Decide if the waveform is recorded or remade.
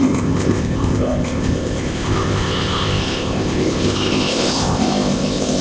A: remade